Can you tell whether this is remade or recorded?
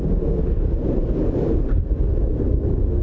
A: recorded